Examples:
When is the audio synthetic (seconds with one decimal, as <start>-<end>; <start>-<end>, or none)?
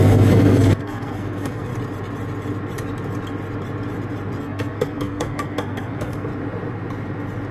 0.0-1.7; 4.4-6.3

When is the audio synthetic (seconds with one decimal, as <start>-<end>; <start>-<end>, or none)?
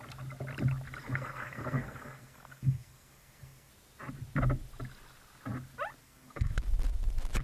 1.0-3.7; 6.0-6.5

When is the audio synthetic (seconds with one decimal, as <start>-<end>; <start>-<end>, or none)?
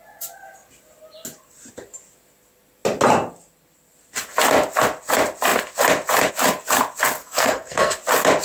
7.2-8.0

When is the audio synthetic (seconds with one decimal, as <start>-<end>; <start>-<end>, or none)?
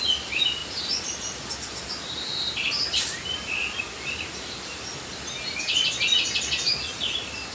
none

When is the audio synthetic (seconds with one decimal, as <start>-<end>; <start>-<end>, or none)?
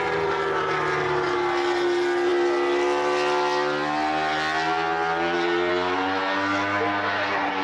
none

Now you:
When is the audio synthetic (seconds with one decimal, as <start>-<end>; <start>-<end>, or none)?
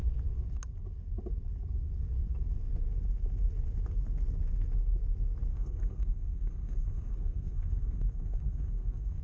5.5-9.2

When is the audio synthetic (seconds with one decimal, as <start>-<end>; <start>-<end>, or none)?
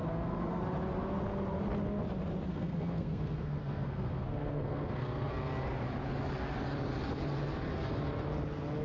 0.0-0.6; 2.5-5.3